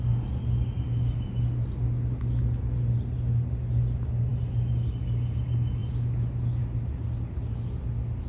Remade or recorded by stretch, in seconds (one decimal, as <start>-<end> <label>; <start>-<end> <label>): 0.0-8.3 recorded